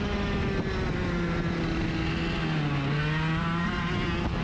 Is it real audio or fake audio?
real